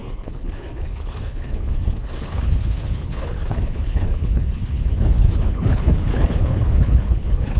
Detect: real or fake fake